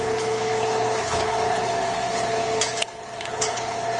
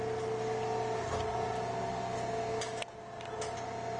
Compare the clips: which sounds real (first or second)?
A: second